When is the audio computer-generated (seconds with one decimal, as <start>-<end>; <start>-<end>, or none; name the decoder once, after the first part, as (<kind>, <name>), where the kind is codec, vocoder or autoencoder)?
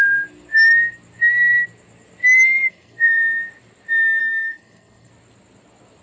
2.7-3.2 (codec, SNAC); 4.2-5.1